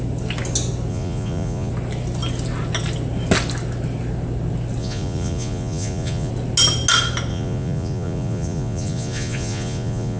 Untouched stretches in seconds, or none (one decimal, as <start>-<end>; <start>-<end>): 0.0-0.9; 1.7-4.8; 6.3-7.3